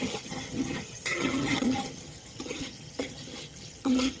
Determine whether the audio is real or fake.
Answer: fake